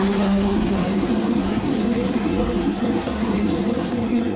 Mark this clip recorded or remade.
remade